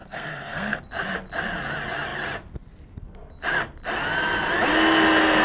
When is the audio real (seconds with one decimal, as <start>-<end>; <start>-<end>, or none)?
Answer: 0.8-5.4